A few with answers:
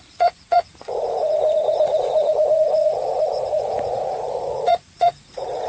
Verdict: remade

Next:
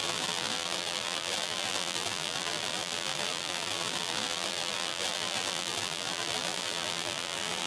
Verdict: remade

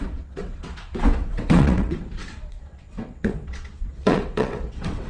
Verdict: remade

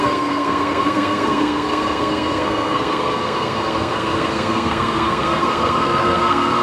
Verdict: remade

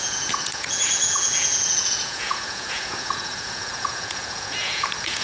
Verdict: remade